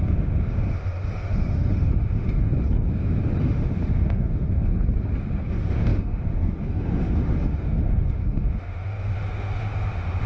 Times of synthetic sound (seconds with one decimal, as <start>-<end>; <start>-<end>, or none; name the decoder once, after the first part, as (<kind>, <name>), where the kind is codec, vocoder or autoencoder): 0.0-2.5 (autoencoder, DAC-VAE); 3.4-4.7; 5.5-10.3